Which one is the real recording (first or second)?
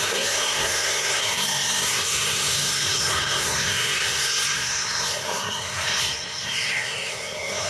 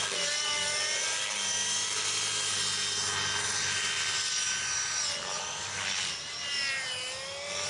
second